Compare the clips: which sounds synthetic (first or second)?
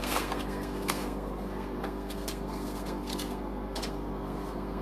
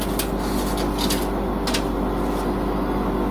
first